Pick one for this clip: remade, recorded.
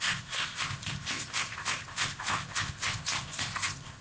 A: remade